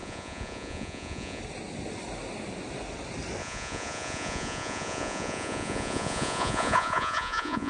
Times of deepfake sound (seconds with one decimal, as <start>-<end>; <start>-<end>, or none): 0.0-1.4; 3.4-7.7